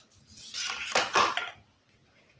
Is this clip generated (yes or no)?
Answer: no